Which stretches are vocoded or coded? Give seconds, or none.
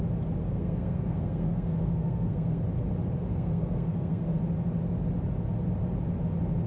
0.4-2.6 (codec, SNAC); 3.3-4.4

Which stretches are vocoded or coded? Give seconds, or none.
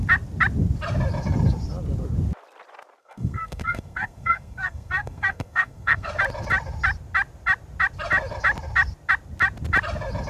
3.0-6.1 (codec, SNAC)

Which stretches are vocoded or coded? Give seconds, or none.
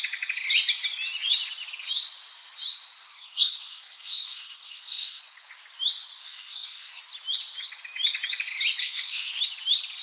3.1-5.2 (codec, SNAC); 6.2-7.0; 8.8-9.4